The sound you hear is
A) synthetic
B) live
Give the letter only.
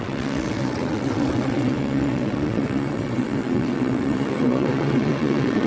A